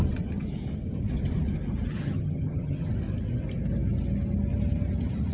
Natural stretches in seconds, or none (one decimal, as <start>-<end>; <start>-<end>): 0.0-1.9; 2.9-5.3